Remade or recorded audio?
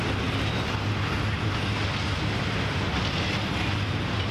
recorded